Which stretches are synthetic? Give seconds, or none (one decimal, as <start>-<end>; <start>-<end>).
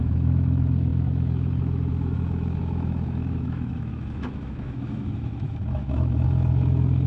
0.0-7.1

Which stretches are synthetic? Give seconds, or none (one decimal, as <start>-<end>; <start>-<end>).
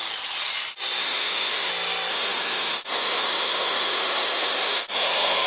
1.0-1.7; 2.1-5.5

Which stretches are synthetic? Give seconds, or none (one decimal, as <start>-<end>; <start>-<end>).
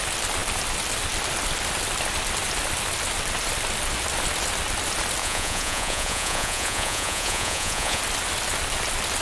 5.2-8.0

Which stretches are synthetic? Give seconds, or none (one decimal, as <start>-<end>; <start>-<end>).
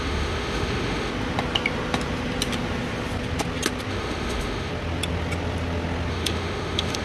0.0-1.1; 3.9-4.7; 6.1-7.0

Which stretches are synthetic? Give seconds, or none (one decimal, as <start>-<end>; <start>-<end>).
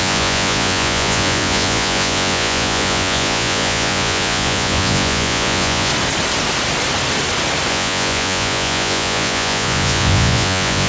0.0-5.9; 7.7-10.9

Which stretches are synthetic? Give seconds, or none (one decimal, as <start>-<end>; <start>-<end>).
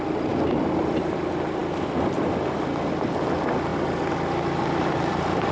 none